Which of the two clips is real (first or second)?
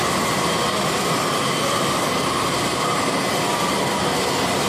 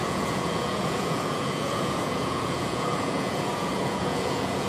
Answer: first